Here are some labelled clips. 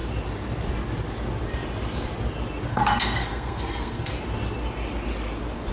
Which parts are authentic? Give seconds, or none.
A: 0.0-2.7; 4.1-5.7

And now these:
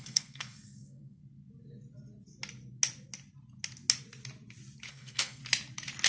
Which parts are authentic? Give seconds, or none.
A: 1.2-4.9; 5.4-6.1

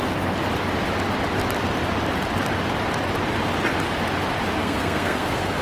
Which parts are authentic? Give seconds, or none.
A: 0.0-4.6

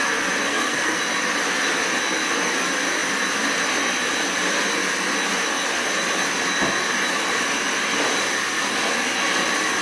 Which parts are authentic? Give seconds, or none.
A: 0.0-0.4; 1.0-9.8

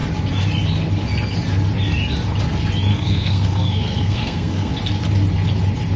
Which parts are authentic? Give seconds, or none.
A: 0.0-2.9; 4.7-6.0

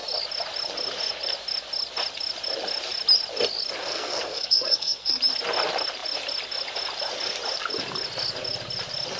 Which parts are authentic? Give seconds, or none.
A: 0.0-3.8; 5.2-9.2